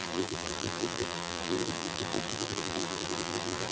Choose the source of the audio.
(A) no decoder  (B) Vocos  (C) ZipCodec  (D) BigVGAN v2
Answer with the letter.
D